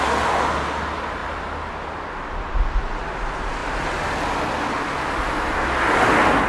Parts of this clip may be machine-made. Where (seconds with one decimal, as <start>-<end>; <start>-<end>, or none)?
none